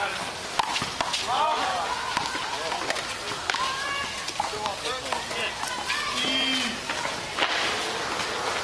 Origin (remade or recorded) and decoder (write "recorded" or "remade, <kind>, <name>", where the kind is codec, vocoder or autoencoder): recorded